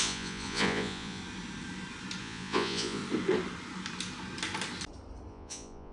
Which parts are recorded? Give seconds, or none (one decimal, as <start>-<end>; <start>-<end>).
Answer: 1.2-2.2; 3.0-5.3